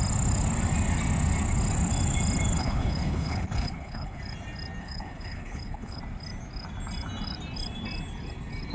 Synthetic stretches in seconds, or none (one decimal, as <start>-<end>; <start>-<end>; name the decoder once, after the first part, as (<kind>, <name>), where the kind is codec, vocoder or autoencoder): 2.6-4.2 (codec, HILCodec); 4.8-6.0